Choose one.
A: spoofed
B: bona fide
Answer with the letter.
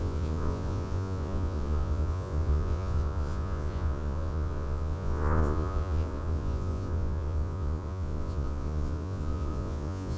A